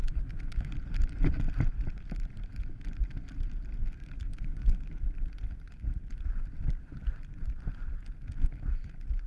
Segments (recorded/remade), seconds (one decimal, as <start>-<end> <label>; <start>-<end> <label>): 0.0-0.7 remade; 0.7-4.3 recorded; 4.3-4.8 remade; 4.8-9.3 recorded